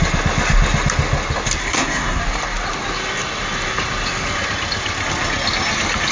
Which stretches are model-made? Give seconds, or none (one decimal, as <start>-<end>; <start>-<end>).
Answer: 1.6-2.2